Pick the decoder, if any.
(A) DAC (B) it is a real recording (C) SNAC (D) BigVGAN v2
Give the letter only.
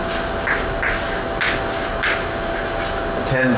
B